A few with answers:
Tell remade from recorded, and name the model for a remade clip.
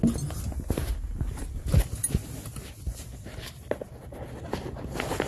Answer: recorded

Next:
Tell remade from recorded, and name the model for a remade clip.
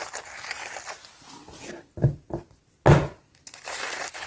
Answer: recorded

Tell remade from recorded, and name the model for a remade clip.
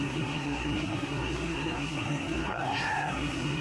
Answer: remade, codec, SNAC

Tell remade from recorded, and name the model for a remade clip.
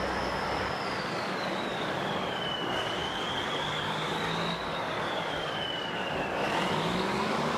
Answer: remade, codec, DAC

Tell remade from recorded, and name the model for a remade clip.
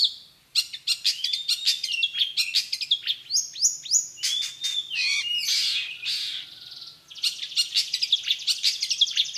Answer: recorded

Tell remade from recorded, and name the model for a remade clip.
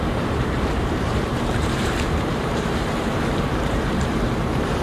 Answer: remade, vocoder, BigVGAN v2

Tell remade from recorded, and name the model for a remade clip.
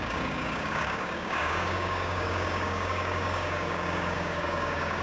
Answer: remade, codec, DAC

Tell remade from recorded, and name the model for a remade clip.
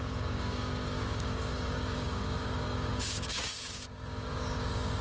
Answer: remade, codec, DAC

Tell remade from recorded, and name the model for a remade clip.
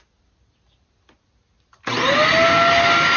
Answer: recorded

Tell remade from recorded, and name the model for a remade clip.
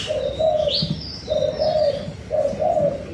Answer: recorded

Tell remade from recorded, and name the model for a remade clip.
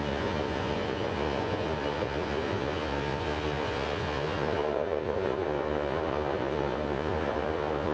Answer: remade, vocoder, Vocos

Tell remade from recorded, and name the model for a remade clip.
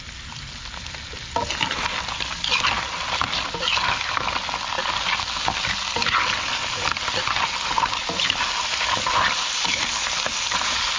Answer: recorded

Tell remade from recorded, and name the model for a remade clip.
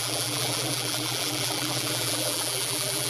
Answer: remade, vocoder, BigVGAN v2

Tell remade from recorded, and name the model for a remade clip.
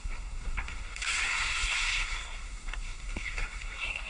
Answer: remade, codec, SNAC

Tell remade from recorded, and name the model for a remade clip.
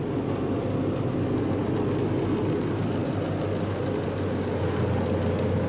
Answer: recorded